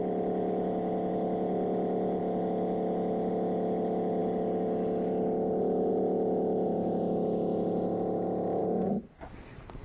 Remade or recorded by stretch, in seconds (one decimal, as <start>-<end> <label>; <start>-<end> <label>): 0.0-9.8 recorded